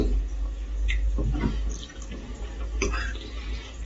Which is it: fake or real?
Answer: real